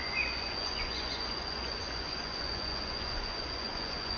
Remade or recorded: remade